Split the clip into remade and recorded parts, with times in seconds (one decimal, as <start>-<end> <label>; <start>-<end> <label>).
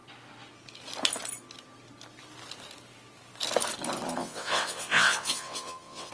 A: 0.0-4.2 recorded; 4.2-6.1 remade